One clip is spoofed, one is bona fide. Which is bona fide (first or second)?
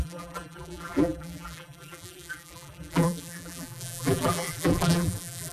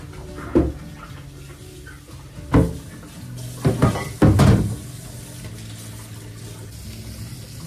second